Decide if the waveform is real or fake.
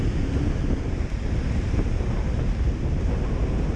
real